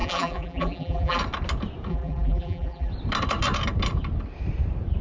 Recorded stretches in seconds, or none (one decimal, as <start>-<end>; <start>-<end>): 1.2-1.9; 2.9-5.0